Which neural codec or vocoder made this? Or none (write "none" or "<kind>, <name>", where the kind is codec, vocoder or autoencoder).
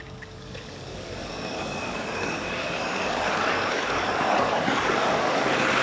codec, DAC